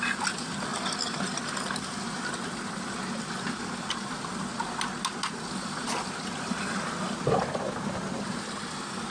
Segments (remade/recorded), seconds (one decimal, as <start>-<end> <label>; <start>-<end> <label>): 0.0-9.1 recorded